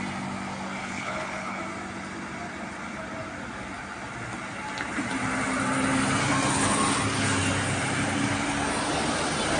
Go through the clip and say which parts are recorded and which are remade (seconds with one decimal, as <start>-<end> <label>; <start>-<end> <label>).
0.0-0.8 recorded; 0.8-1.6 remade; 1.6-9.6 recorded